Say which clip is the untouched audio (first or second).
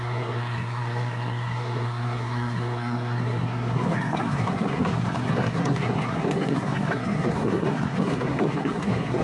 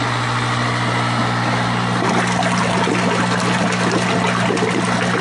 second